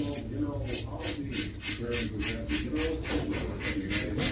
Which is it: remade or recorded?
recorded